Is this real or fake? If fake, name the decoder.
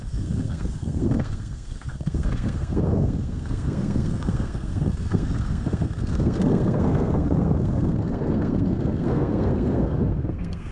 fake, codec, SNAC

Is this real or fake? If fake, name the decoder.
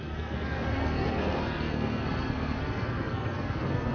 fake, codec, SNAC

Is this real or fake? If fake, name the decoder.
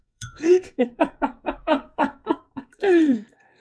fake, codec, SNAC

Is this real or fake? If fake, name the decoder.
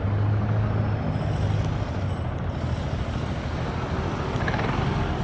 real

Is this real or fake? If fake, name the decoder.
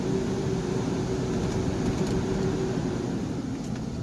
real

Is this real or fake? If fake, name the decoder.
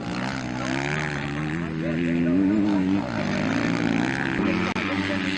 real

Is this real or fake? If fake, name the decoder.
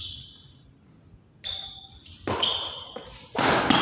real